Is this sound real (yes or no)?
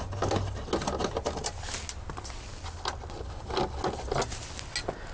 yes